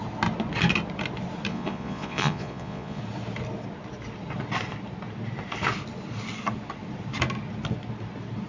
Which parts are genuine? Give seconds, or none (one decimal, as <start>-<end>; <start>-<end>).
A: 0.0-1.5; 3.0-8.5